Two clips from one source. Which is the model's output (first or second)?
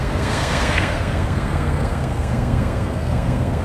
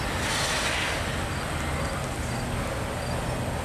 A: first